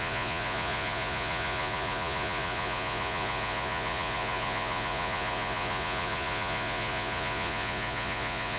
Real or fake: fake